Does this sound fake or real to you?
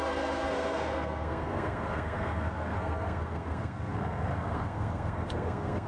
fake